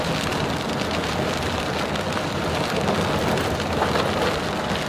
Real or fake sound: real